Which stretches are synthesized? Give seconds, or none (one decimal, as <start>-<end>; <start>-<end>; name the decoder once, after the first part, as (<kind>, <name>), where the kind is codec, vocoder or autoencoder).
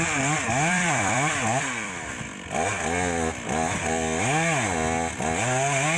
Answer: 0.0-2.3 (vocoder, BigVGAN v2)